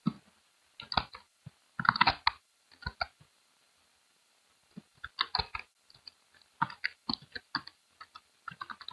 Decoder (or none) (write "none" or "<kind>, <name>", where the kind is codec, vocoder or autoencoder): none